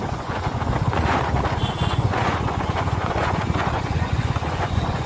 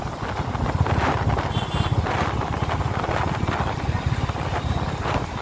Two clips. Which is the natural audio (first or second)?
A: second